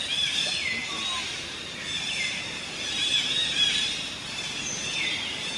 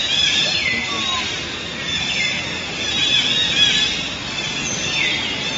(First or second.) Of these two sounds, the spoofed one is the first